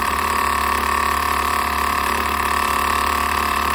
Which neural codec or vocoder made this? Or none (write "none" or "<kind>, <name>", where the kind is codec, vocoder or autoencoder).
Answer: vocoder, BigVGAN v2